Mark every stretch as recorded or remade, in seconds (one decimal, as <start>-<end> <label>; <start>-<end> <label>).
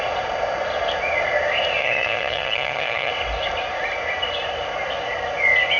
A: 0.0-1.8 recorded; 1.8-3.1 remade; 3.1-5.8 recorded